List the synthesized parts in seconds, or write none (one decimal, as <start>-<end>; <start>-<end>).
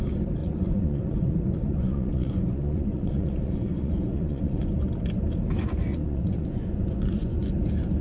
0.4-4.7; 5.9-7.5